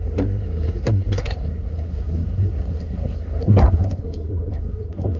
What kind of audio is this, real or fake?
fake